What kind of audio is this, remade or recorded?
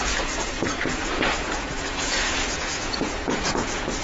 remade